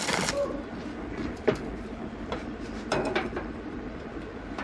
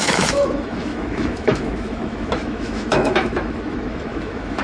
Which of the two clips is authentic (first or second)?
first